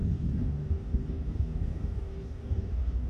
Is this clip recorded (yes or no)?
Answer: no